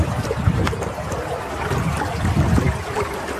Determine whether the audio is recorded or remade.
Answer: recorded